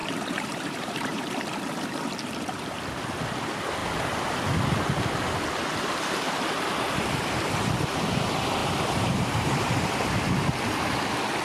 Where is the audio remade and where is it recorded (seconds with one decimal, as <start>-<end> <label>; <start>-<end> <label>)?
0.0-1.2 remade; 1.2-8.6 recorded; 8.6-10.5 remade; 10.5-11.4 recorded